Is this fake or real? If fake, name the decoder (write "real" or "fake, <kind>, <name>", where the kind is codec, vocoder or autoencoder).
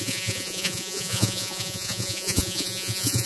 fake, vocoder, Vocos